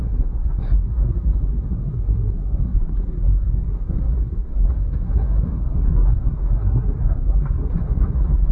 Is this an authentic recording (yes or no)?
no